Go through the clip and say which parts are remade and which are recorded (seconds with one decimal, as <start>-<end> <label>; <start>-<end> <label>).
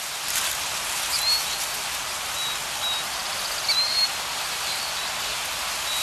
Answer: 0.0-3.2 recorded; 3.2-5.0 remade; 5.0-6.0 recorded